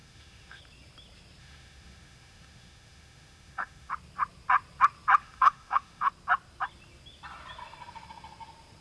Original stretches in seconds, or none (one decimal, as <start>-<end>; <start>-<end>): 0.6-1.4; 3.9-5.2; 6.1-8.8